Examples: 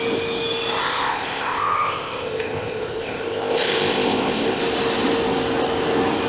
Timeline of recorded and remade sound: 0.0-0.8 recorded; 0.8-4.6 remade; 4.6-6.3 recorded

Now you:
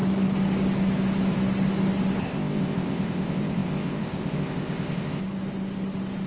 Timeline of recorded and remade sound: 0.0-2.2 recorded; 2.2-5.2 remade; 5.2-6.3 recorded

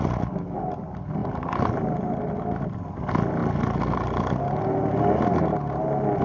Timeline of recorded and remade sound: 0.0-6.2 recorded

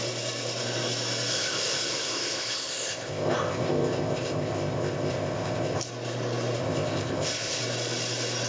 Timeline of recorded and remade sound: 0.0-1.3 recorded; 1.3-5.8 remade; 5.8-6.6 recorded; 6.6-7.6 remade; 7.6-8.5 recorded

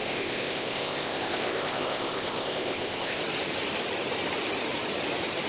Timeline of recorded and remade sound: 0.0-3.2 remade; 3.2-5.5 recorded

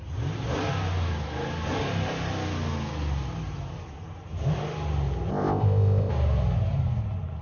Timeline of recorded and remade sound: 0.0-5.3 recorded; 5.3-6.1 remade; 6.1-7.4 recorded

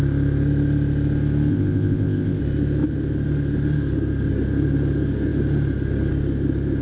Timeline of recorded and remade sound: 0.0-1.5 recorded; 1.5-2.4 remade; 2.4-6.8 recorded